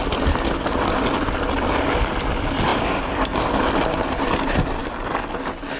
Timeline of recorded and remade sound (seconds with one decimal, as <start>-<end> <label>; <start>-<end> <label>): 0.0-5.8 recorded